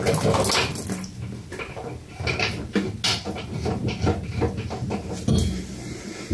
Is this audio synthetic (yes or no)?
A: no